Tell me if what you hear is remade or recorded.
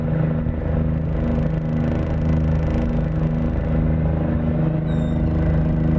recorded